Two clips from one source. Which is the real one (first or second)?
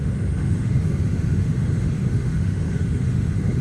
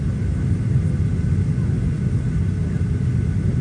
second